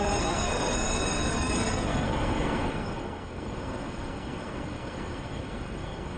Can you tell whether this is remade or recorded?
remade